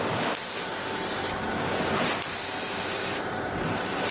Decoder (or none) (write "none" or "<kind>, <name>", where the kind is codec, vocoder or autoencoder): none